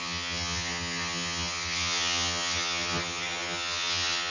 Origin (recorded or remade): remade